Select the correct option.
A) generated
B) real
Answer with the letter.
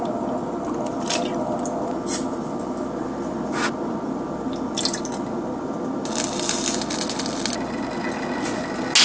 B